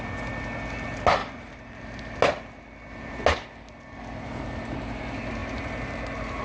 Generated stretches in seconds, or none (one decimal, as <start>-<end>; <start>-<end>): 1.2-2.2